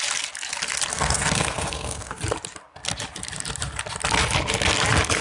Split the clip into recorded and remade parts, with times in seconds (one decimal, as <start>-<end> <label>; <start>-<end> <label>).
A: 0.0-0.9 recorded; 0.9-2.2 remade; 2.2-5.2 recorded